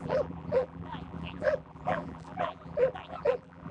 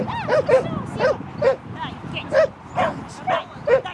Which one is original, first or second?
second